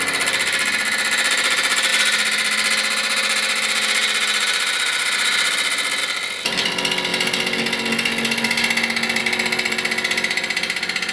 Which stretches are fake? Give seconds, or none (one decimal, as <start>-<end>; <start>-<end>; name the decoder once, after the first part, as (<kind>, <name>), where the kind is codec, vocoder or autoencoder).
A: none